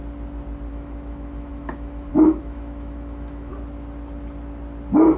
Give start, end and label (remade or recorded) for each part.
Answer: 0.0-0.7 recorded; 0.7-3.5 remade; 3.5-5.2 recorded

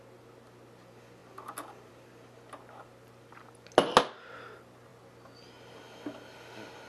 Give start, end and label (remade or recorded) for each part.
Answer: 0.0-6.9 recorded

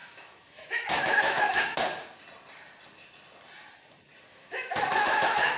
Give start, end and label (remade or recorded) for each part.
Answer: 0.0-1.8 remade; 1.8-4.3 recorded; 4.3-5.6 remade

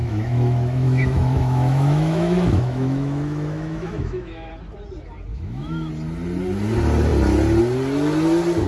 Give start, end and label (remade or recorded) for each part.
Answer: 0.0-4.5 remade; 4.5-5.3 recorded; 5.3-5.9 remade; 5.9-8.7 recorded

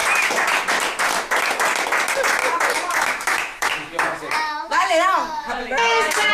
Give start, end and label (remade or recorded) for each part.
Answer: 0.0-2.4 recorded; 2.4-6.3 remade

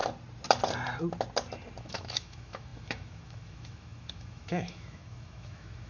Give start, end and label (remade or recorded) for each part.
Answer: 0.0-1.8 recorded; 1.8-5.9 remade

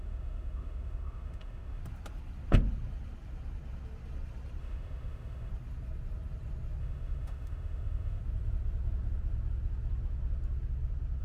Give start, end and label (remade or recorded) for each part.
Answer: 0.0-1.8 remade; 1.8-4.6 recorded; 4.6-5.5 remade; 5.5-6.8 recorded; 6.8-8.2 remade; 8.2-11.2 recorded